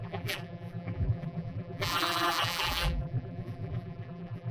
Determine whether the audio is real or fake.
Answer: fake